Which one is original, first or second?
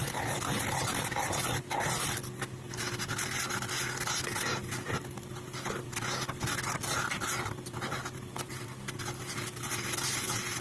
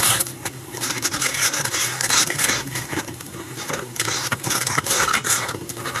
first